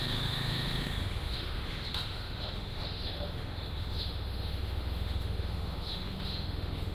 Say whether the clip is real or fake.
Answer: fake